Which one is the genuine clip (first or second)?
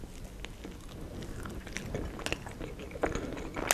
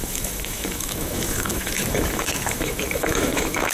first